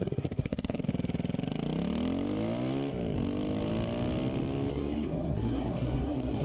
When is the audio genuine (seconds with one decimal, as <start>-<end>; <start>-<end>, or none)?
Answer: 0.9-4.7